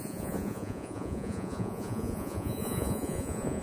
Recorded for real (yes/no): no